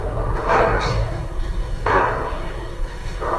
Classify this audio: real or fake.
fake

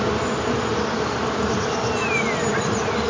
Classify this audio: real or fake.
real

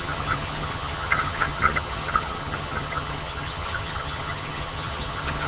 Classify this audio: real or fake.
fake